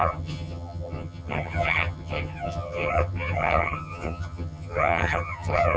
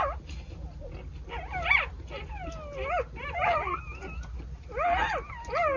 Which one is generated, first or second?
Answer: first